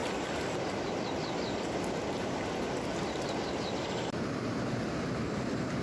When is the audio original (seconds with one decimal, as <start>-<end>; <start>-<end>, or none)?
3.5-5.8